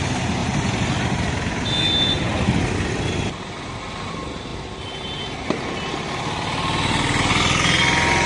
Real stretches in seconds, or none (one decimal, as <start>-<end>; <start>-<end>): 0.0-0.4; 1.8-8.3